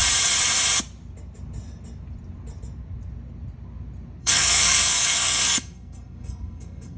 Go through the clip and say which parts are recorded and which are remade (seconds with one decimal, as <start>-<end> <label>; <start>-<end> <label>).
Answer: 0.0-4.2 recorded; 4.2-7.0 remade